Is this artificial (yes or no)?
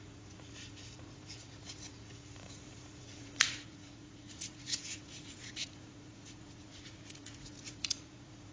yes